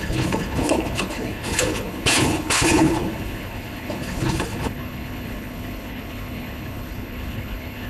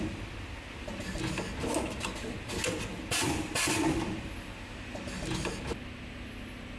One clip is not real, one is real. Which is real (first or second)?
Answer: second